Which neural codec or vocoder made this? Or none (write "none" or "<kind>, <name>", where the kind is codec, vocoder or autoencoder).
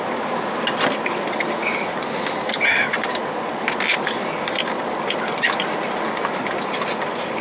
none